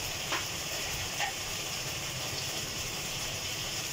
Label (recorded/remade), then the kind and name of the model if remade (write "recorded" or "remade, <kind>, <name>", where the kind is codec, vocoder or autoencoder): remade, vocoder, BigVGAN v2